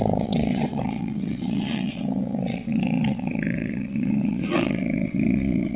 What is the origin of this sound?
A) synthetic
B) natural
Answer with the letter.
A